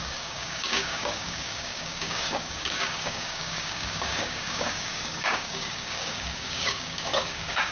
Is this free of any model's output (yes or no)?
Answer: no